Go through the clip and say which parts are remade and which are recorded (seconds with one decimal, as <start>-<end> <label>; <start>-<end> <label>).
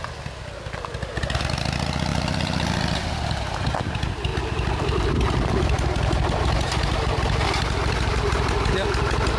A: 0.0-2.1 recorded; 2.1-3.1 remade; 3.1-4.3 recorded; 4.3-8.7 remade; 8.7-9.4 recorded